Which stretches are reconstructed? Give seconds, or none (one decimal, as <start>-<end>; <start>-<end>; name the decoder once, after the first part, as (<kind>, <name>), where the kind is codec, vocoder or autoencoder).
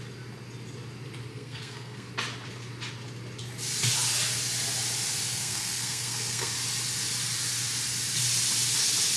1.3-2.1 (codec, SNAC); 5.3-6.5